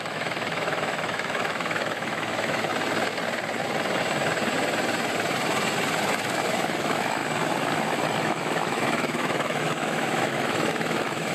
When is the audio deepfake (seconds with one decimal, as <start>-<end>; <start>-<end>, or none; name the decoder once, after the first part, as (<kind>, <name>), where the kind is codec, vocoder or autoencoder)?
0.0-2.7 (autoencoder, DAC-VAE); 6.5-7.2; 8.2-11.3